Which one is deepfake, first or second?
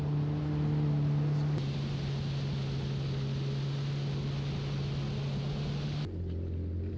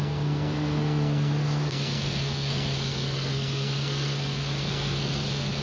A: second